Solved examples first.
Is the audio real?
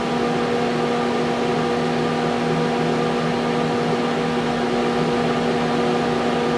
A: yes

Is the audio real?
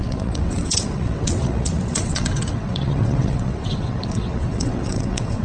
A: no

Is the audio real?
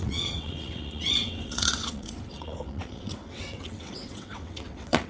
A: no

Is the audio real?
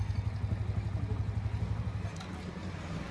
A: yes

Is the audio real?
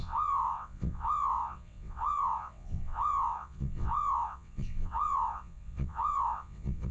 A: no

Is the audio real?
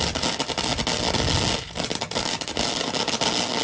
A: yes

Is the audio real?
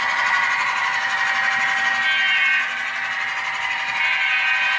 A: yes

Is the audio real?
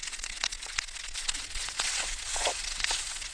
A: no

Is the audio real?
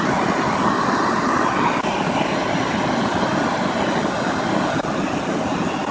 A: yes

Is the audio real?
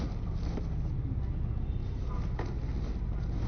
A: yes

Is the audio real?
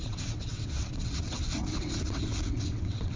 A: no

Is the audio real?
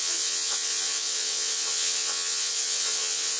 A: no